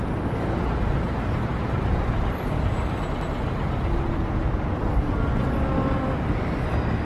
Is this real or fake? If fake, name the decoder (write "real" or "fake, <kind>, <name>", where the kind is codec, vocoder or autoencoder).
real